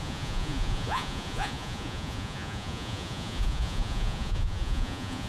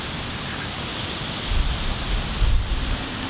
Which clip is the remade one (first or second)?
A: first